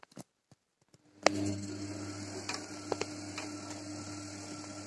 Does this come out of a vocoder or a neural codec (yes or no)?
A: no